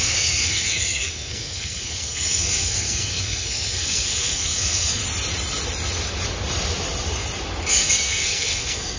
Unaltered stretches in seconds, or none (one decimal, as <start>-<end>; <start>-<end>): 5.0-7.7